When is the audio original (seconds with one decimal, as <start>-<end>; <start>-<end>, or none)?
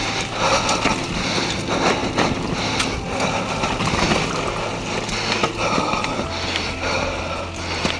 0.0-8.0